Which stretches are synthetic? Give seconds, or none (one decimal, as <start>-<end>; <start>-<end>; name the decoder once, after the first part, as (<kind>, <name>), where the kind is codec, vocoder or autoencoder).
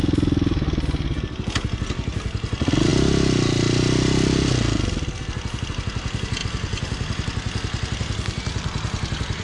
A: none